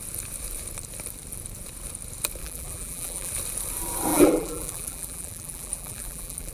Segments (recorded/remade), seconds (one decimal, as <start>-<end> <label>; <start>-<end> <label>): 0.0-2.4 recorded; 2.4-3.3 remade; 3.3-4.1 recorded; 4.1-6.5 remade